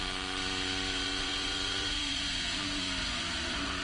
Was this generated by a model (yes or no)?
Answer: yes